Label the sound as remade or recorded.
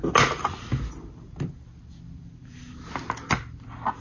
recorded